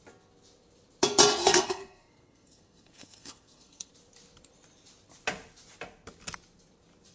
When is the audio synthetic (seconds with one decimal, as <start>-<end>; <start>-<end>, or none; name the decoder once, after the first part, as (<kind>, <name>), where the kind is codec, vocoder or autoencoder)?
1.4-3.9 (codec, SNAC)